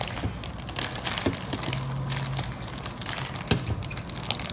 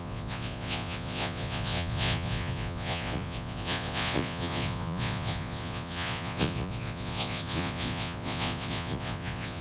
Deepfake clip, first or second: second